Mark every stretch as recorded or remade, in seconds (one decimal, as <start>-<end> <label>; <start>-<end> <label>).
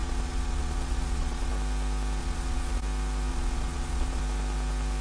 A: 0.0-1.5 remade; 1.5-2.2 recorded; 2.2-2.8 remade; 2.8-3.3 recorded; 3.3-4.2 remade; 4.2-5.0 recorded